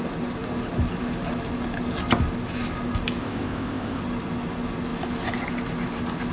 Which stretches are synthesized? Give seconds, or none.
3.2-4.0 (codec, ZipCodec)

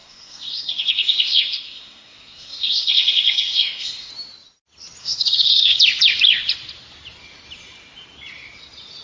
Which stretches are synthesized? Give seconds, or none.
0.0-4.1 (codec, SNAC); 5.0-5.8

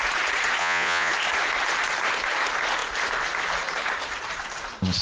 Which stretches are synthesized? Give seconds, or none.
0.6-1.1 (vocoder, Vocos)

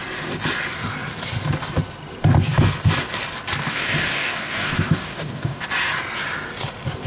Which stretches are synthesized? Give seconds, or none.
3.7-5.6 (codec, DAC)

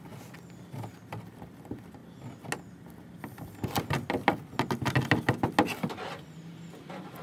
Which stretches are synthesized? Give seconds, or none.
none

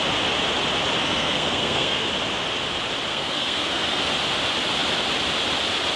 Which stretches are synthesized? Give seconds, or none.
1.0-2.1 (codec, SNAC); 3.1-4.0

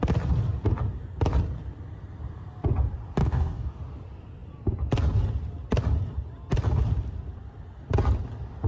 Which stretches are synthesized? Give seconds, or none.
3.2-3.8 (codec, DAC)

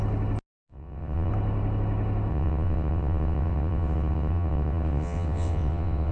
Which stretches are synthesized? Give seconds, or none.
0.7-1.3 (vocoder, WaveNeXt); 2.3-6.1